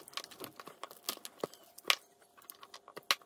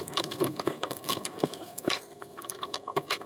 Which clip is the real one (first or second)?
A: first